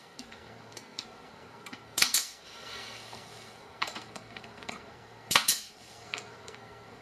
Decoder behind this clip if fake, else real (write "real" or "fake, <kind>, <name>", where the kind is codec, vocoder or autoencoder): fake, codec, SNAC